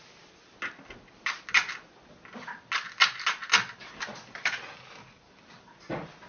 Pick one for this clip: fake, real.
real